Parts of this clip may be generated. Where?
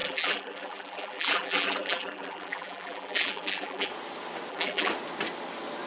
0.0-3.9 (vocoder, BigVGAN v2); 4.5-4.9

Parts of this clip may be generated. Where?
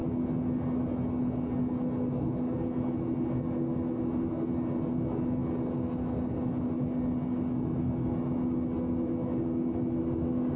none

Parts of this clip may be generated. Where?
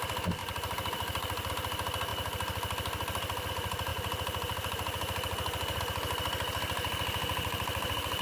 0.4-1.5 (vocoder, BigVGAN v2); 3.9-5.8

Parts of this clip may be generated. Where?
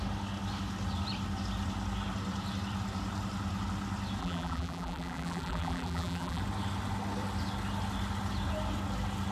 4.2-6.4 (vocoder, BigVGAN v2)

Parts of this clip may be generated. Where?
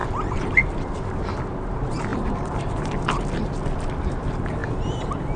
0.0-1.4 (vocoder, BigVGAN v2); 2.1-4.0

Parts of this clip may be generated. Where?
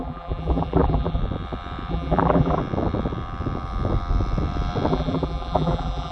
0.0-1.2 (vocoder, BigVGAN v2); 1.9-2.6; 4.9-6.1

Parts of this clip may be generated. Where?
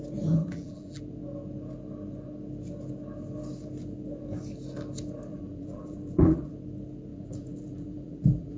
0.4-1.0 (vocoder, BigVGAN v2); 5.3-6.5; 7.1-8.6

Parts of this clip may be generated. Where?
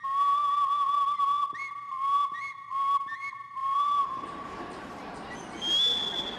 3.6-5.3 (vocoder, BigVGAN v2)